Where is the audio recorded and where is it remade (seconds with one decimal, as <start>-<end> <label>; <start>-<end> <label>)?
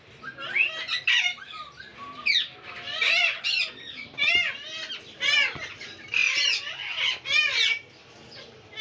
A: 0.0-1.9 recorded; 1.9-4.0 remade; 4.0-8.8 recorded